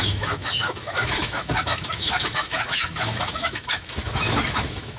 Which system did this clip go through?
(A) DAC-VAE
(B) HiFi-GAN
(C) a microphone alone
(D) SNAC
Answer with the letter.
A